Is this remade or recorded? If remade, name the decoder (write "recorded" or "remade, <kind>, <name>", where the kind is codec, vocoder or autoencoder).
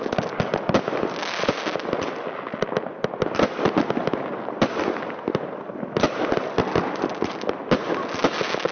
recorded